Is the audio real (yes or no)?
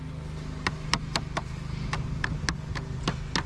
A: yes